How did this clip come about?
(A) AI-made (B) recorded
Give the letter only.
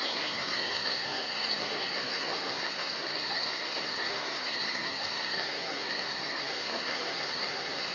A